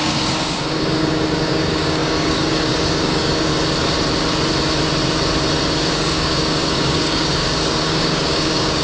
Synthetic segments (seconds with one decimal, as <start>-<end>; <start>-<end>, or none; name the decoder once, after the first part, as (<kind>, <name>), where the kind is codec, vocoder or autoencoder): 0.0-3.5 (codec, DAC); 5.9-8.8

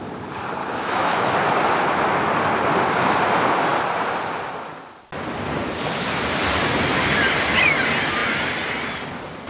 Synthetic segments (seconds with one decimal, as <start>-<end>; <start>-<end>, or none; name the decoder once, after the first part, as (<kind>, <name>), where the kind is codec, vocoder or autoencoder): 0.6-1.3 (autoencoder, DAC-VAE)